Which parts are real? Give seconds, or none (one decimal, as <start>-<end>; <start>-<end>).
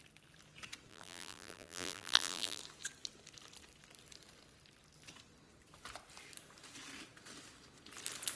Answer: 0.0-0.9; 2.6-8.4